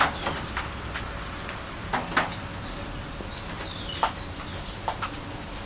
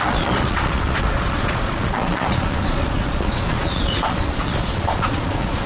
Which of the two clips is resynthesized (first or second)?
second